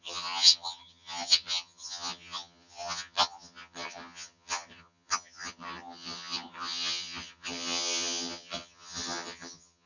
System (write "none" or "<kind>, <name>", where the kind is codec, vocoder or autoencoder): vocoder, HiFi-GAN